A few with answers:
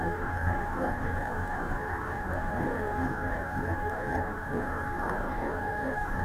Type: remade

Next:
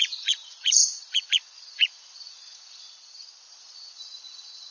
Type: remade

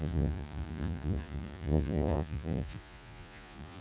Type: remade